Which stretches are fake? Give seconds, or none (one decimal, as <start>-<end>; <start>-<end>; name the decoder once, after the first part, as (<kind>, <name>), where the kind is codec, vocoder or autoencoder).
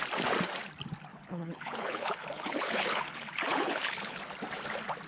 1.1-4.2 (codec, HILCodec)